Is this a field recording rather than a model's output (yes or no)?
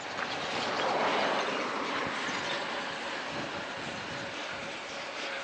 yes